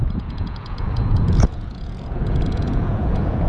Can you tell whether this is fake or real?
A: fake